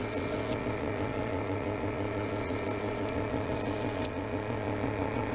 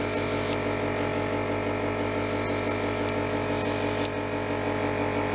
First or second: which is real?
second